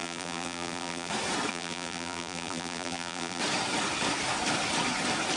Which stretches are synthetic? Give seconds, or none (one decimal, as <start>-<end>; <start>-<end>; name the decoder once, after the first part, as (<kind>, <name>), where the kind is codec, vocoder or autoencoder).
0.0-1.1 (vocoder, BigVGAN v2); 1.5-3.4